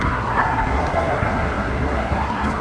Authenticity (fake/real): fake